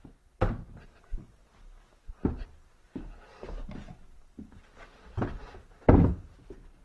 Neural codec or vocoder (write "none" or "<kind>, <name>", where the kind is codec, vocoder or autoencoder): none